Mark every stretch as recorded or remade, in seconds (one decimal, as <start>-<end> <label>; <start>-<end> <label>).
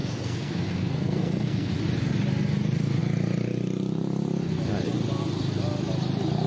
0.0-1.7 remade; 1.7-6.5 recorded